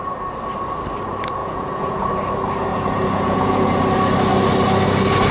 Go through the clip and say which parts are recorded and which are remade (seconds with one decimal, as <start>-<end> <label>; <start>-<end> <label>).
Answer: 0.0-1.4 recorded; 1.4-2.1 remade; 2.1-2.7 recorded; 2.7-3.8 remade; 3.8-5.3 recorded